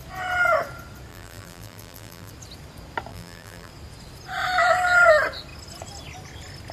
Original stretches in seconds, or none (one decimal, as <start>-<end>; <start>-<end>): 0.0-1.1; 2.3-3.1; 3.7-6.7